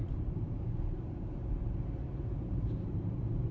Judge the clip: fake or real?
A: fake